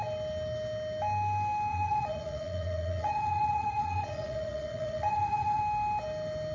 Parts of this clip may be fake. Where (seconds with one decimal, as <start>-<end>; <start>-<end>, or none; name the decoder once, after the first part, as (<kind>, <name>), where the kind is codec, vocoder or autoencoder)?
1.7-5.6 (vocoder, Vocos)